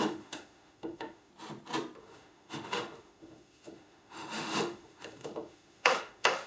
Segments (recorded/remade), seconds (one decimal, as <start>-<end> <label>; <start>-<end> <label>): 0.0-1.3 remade; 1.3-2.0 recorded; 2.0-6.5 remade